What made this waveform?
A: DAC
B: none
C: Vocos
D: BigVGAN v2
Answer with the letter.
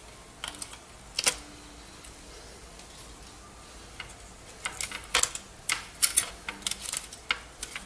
B